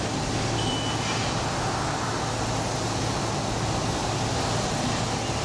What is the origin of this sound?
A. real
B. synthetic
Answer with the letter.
A